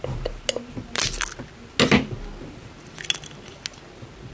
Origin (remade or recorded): recorded